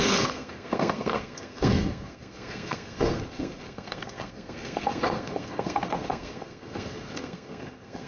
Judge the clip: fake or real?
fake